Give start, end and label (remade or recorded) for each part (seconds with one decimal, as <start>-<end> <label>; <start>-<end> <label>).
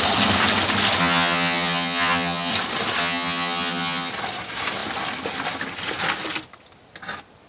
0.0-1.0 recorded; 1.0-2.5 remade; 2.5-3.0 recorded; 3.0-4.1 remade; 4.1-7.5 recorded